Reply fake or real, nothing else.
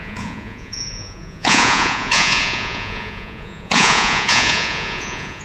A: fake